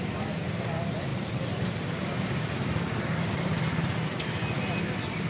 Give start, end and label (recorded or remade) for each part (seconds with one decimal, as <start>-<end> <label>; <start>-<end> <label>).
0.0-1.1 recorded; 1.1-4.1 remade; 4.1-5.3 recorded